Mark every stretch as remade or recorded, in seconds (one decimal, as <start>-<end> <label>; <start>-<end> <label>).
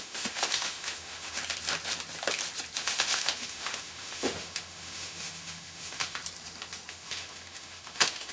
0.0-1.4 remade; 1.4-2.8 recorded; 2.8-6.2 remade; 6.2-6.9 recorded; 6.9-8.3 remade